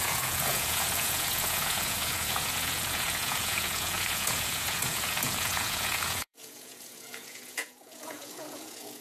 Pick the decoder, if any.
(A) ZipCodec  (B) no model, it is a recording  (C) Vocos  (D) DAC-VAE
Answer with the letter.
C